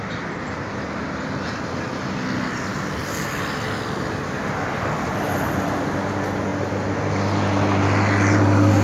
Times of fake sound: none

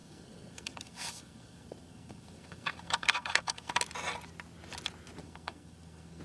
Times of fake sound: 0.0-3.7 (codec, SNAC); 5.2-6.2

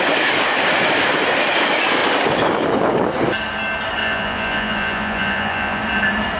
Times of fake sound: 4.0-5.8 (vocoder, Vocos)

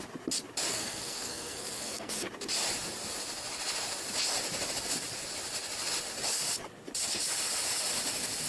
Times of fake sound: 0.7-2.1 (codec, SNAC)

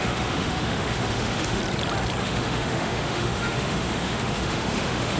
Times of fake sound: 0.0-1.6 (autoencoder, DAC-VAE); 2.2-5.2

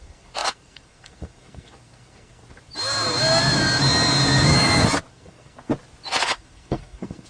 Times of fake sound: 0.0-2.4 (codec, SNAC); 5.1-5.7; 6.2-7.3

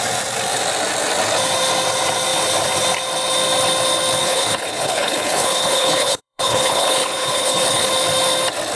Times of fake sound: 4.2-7.9 (codec, HILCodec)

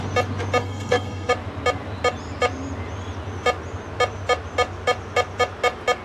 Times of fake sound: 0.6-1.3 (codec, SNAC)